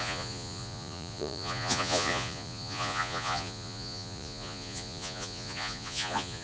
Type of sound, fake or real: fake